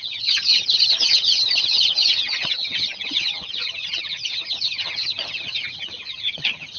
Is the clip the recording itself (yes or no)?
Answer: no